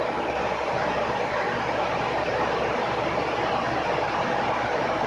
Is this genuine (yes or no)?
yes